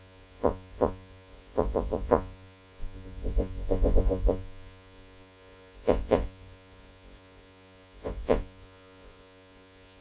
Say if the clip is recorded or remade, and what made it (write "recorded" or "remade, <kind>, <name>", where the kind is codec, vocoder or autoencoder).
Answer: remade, vocoder, Vocos